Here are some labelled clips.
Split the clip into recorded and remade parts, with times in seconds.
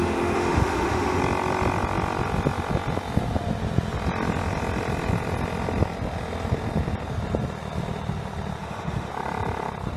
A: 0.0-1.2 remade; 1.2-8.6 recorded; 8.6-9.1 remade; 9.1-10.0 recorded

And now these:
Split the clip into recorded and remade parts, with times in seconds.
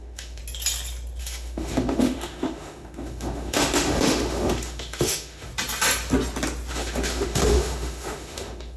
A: 0.0-0.4 remade; 0.4-1.2 recorded; 1.2-5.5 remade; 5.5-6.7 recorded; 6.7-8.8 remade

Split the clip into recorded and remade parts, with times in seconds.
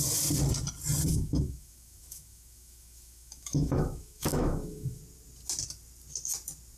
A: 0.0-1.1 recorded; 1.1-5.0 remade; 5.0-6.8 recorded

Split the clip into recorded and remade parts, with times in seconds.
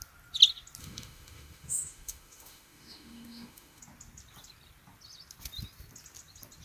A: 0.0-0.8 recorded; 0.8-3.8 remade; 3.8-6.6 recorded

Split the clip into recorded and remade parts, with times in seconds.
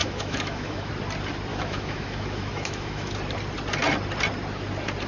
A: 0.0-0.9 remade; 0.9-1.5 recorded; 1.5-3.1 remade; 3.1-5.1 recorded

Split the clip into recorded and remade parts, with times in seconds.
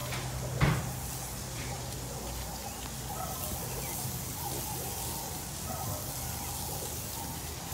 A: 0.0-7.7 recorded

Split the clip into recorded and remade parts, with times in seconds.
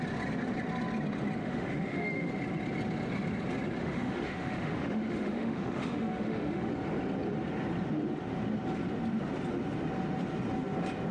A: 0.0-1.4 recorded; 1.4-2.3 remade; 2.3-3.8 recorded; 3.8-6.7 remade; 6.7-11.1 recorded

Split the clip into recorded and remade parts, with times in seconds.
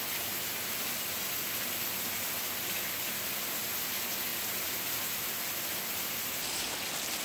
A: 0.0-7.2 recorded